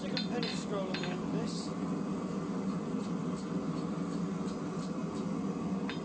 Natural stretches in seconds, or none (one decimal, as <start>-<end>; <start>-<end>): 0.0-6.0